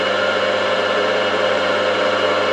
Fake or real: fake